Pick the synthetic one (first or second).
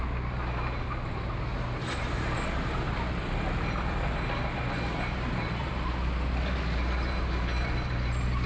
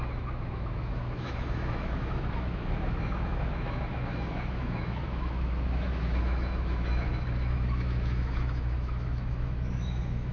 second